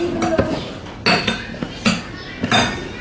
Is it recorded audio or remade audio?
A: recorded